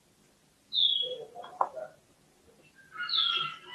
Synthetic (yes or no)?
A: no